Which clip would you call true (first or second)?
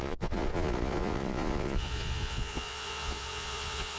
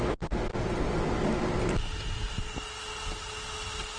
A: second